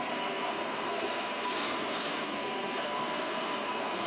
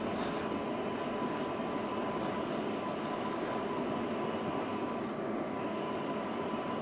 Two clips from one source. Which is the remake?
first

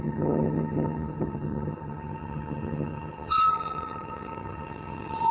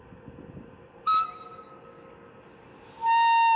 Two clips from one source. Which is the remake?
first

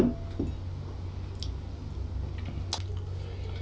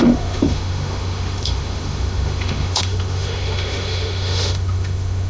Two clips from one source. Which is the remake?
second